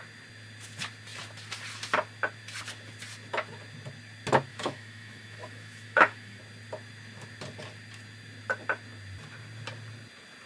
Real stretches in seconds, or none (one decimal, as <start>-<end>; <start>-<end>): 0.0-4.5; 6.4-10.5